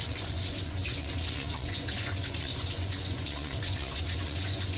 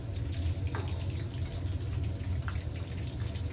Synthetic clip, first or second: first